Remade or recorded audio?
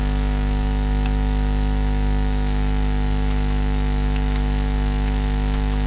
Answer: remade